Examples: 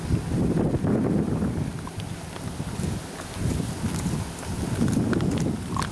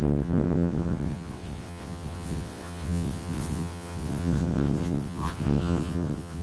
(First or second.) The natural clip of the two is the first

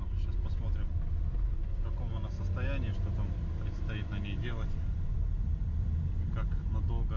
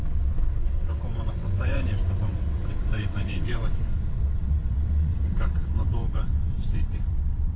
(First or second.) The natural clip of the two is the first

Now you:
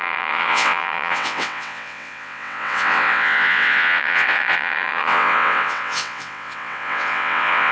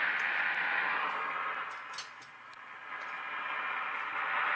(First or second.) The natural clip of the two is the second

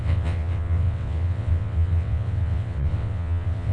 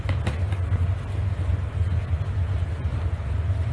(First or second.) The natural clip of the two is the second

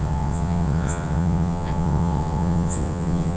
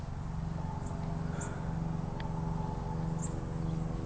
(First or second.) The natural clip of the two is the second